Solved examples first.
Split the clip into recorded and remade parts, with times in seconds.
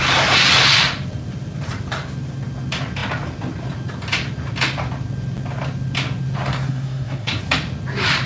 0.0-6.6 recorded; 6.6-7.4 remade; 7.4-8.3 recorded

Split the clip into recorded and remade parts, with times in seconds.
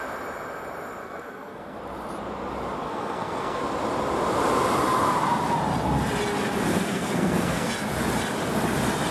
0.0-1.0 recorded; 1.0-1.8 remade; 1.8-2.8 recorded; 2.8-3.6 remade; 3.6-6.7 recorded; 6.7-7.7 remade; 7.7-9.1 recorded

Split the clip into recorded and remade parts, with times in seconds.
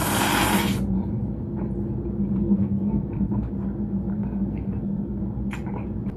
0.0-2.4 recorded; 2.4-3.5 remade; 3.5-4.1 recorded; 4.1-5.2 remade; 5.2-6.2 recorded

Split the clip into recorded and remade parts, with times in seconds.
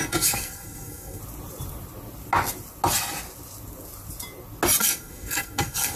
0.0-1.2 remade; 1.2-4.8 recorded; 4.8-6.0 remade